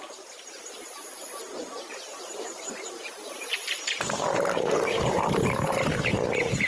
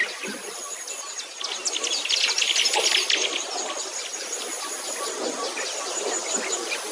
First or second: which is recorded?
second